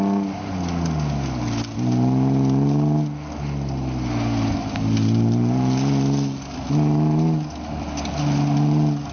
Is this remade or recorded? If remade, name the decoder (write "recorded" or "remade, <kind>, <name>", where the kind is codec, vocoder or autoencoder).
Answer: recorded